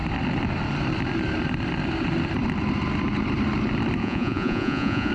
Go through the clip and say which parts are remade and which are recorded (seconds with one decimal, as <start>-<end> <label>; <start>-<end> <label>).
0.0-4.0 recorded; 4.0-5.1 remade